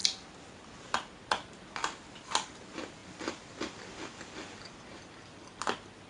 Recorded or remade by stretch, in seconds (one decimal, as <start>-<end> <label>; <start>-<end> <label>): 0.0-3.0 recorded; 3.0-5.6 remade; 5.6-6.1 recorded